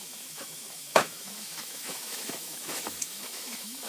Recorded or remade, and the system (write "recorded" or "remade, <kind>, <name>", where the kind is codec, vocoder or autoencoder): remade, autoencoder, DAC-VAE